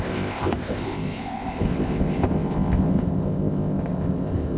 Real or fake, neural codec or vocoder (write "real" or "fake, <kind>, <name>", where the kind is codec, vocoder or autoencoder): fake, codec, ZipCodec